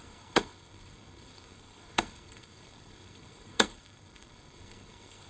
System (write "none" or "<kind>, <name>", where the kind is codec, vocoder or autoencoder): codec, SNAC